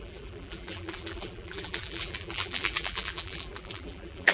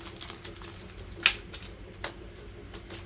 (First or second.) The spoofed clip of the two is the first